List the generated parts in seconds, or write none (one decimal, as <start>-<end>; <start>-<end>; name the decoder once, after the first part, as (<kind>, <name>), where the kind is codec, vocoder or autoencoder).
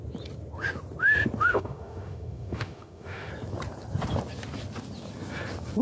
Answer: 1.5-3.3 (autoencoder, DAC-VAE)